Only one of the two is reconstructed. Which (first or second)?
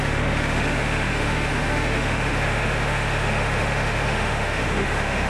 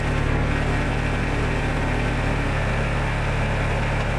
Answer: first